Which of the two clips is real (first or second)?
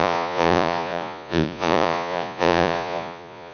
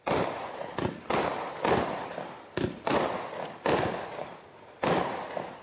second